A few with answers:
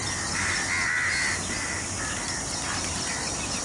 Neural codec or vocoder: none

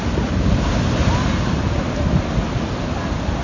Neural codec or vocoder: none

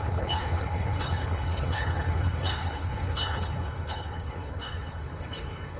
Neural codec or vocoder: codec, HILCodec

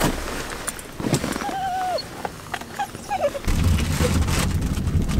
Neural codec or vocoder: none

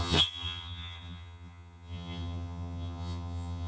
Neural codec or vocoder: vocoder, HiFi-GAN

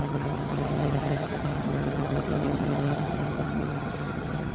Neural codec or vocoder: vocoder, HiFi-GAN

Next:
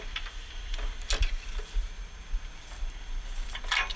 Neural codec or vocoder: none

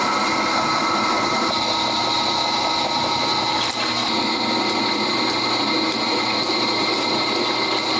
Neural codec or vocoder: none